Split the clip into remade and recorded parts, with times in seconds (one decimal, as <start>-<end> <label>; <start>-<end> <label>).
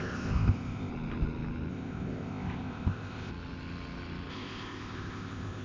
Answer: 0.0-0.9 remade; 0.9-1.7 recorded; 1.7-3.3 remade; 3.3-4.3 recorded; 4.3-5.6 remade